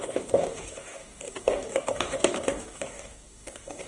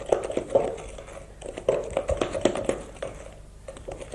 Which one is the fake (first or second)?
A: first